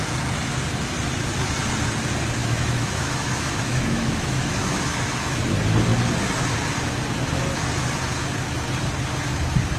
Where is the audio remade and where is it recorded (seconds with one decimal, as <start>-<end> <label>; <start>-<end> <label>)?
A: 0.0-2.4 recorded; 2.4-5.4 remade; 5.4-9.8 recorded